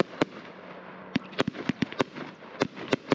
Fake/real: real